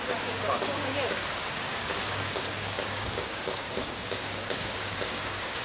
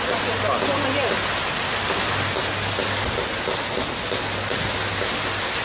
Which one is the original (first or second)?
second